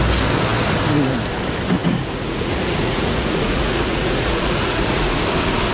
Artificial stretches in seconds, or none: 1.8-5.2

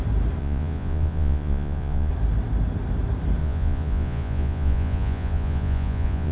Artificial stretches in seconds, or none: 0.4-2.1; 3.4-6.3

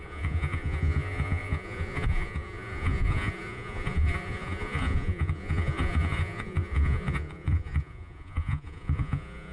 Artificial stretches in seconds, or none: 0.0-9.5

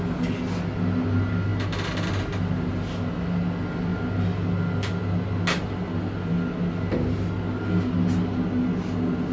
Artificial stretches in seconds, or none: none